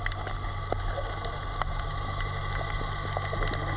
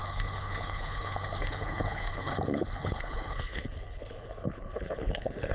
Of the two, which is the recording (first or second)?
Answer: first